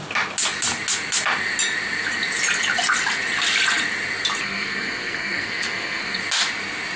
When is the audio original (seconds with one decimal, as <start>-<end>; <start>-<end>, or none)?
0.0-4.4; 6.2-7.0